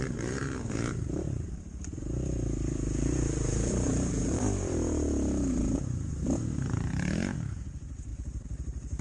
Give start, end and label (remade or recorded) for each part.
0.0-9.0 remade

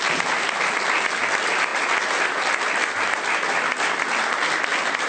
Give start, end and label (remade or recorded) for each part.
0.0-5.1 recorded

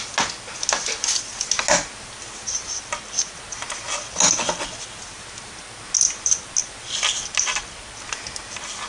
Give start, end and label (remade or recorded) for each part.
0.0-8.9 recorded